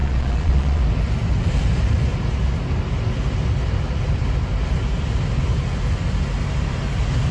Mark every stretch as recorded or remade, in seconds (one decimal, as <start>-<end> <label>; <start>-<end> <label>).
0.0-0.8 remade; 0.8-7.3 recorded